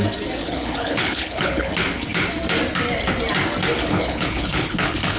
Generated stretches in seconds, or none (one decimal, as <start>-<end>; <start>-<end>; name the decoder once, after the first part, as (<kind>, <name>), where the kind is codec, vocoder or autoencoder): 0.4-1.7 (codec, HILCodec); 3.7-5.2